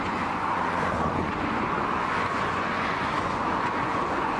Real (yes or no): no